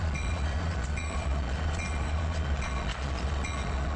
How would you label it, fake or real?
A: fake